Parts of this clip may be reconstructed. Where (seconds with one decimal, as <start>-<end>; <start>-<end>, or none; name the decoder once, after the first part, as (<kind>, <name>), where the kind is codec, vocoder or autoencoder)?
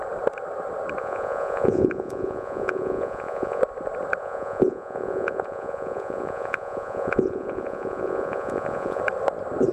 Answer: 1.0-3.6 (vocoder, Vocos); 4.2-9.0